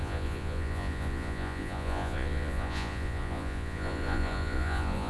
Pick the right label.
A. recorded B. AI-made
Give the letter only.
B